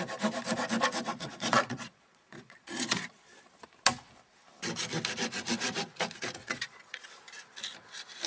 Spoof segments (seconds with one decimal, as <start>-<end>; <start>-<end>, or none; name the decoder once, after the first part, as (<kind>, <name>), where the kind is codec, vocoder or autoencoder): 1.1-3.6 (vocoder, Vocos); 6.4-7.1